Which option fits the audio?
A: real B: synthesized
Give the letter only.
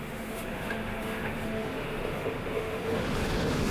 B